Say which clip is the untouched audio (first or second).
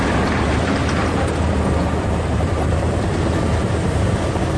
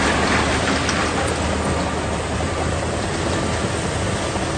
second